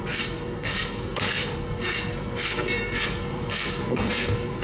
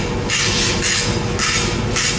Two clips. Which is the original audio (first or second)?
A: second